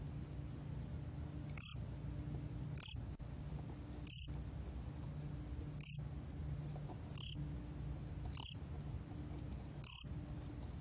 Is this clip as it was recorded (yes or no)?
yes